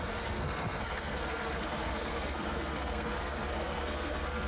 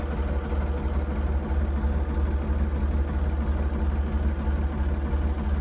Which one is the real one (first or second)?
second